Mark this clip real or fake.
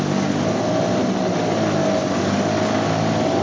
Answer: real